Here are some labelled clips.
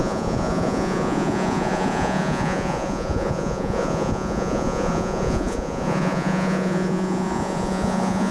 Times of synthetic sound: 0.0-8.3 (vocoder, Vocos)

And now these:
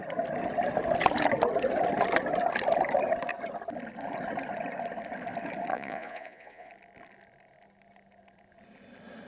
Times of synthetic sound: 5.7-6.7 (vocoder, Vocos)